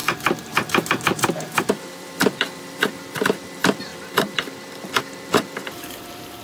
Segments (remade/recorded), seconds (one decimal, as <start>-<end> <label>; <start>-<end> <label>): 0.0-6.4 remade